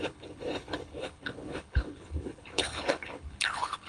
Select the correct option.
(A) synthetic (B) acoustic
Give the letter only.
A